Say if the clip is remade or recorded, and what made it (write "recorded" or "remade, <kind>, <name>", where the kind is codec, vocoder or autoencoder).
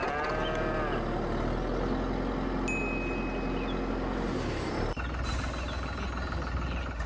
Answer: recorded